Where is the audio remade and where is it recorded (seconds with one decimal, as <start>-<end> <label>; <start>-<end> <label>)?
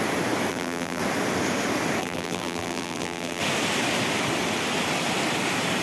0.0-0.5 recorded; 0.5-1.0 remade; 1.0-2.0 recorded; 2.0-3.4 remade; 3.4-5.8 recorded